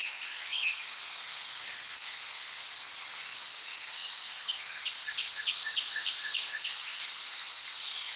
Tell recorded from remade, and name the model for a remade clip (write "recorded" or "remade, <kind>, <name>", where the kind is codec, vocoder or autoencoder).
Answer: remade, codec, SNAC